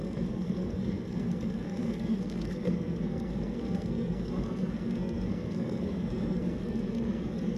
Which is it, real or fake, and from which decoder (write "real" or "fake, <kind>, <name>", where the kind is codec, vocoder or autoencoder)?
fake, codec, SNAC